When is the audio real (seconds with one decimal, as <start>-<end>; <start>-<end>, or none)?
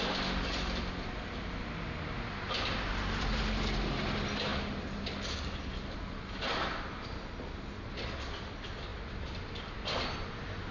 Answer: 0.0-10.7